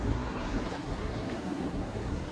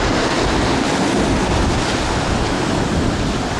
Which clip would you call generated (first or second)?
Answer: first